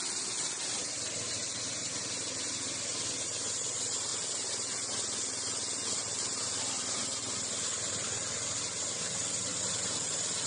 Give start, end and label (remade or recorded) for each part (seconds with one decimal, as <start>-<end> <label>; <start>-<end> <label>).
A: 0.0-10.5 recorded